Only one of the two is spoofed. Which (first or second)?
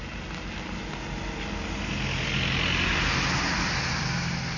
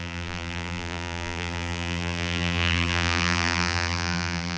second